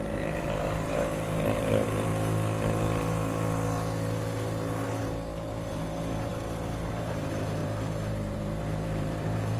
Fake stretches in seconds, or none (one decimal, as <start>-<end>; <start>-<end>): 0.0-2.1; 5.7-6.3; 6.9-9.6